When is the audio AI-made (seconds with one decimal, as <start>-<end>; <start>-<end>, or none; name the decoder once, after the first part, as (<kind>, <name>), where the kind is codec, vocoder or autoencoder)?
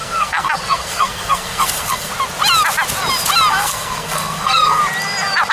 0.0-2.1 (codec, SNAC); 3.5-4.8